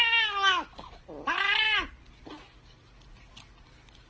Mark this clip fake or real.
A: real